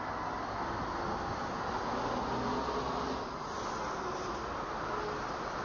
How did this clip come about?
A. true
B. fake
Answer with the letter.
A